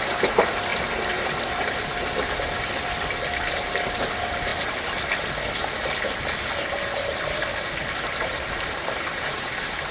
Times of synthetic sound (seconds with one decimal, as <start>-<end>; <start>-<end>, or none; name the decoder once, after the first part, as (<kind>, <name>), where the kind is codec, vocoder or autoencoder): 0.0-0.7 (vocoder, BigVGAN v2); 3.9-4.5; 8.2-9.9